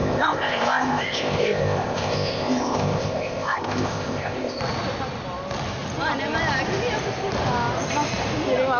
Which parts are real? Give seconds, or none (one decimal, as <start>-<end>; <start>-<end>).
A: 4.6-8.8